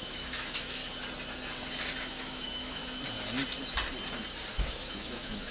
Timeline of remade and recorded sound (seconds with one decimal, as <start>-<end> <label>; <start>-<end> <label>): 0.0-0.8 remade; 0.8-2.0 recorded; 2.0-2.8 remade; 2.8-4.5 recorded; 4.5-5.5 remade